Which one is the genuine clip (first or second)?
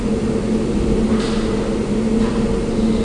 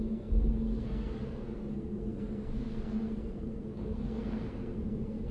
first